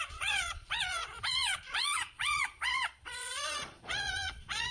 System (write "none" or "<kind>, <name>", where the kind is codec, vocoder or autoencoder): vocoder, Vocos